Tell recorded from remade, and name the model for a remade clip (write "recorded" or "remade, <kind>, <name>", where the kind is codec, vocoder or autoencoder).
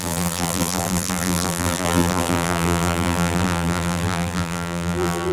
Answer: remade, vocoder, BigVGAN v2